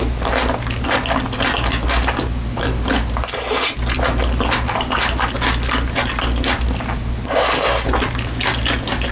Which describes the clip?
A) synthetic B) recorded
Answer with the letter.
B